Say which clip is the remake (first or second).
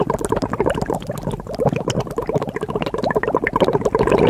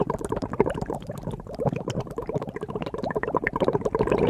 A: second